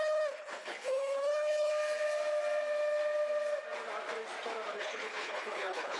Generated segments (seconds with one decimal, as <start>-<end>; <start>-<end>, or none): 0.0-1.7; 4.7-6.0